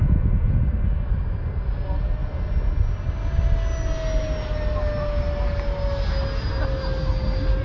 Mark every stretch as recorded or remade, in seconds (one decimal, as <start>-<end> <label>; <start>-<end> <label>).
0.0-0.6 remade; 0.6-7.6 recorded